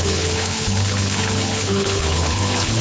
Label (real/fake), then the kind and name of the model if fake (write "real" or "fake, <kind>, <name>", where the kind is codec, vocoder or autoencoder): fake, codec, HILCodec